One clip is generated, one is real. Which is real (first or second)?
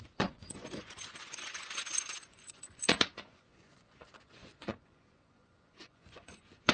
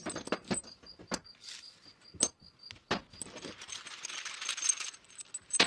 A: second